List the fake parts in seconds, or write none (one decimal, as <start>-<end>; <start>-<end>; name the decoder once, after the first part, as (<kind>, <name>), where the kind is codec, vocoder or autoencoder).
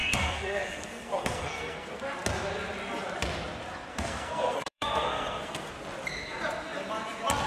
0.0-2.0 (codec, SNAC); 3.9-5.7